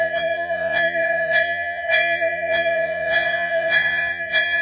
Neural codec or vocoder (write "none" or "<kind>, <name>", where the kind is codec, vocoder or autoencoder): vocoder, Vocos